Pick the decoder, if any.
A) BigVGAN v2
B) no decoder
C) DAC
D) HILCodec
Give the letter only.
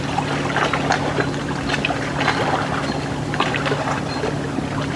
B